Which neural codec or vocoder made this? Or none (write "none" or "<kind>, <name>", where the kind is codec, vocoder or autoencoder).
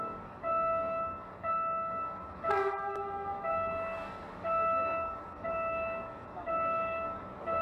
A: codec, DAC